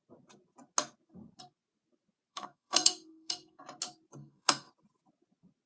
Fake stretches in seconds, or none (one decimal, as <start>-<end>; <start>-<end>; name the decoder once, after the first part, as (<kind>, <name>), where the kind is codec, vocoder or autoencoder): 2.3-3.6 (codec, SNAC); 4.2-4.7